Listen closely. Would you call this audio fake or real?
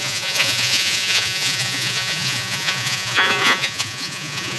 fake